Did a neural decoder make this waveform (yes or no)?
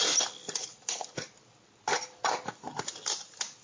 no